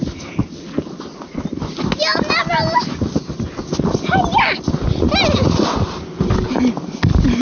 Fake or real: real